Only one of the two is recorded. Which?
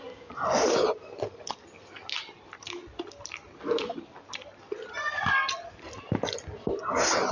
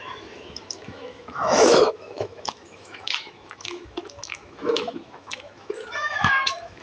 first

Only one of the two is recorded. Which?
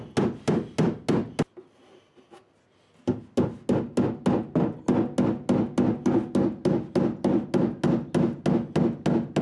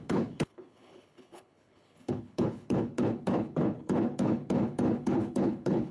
first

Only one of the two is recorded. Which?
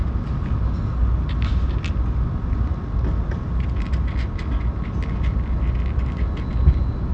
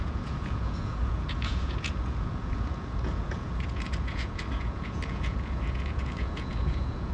first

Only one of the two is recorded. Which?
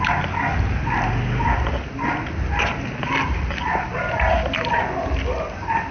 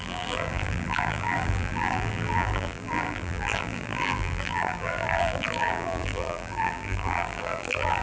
first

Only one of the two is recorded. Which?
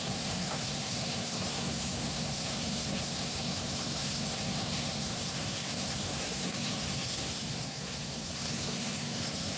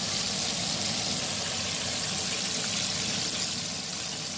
second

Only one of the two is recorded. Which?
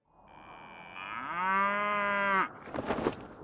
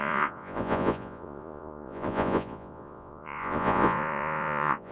first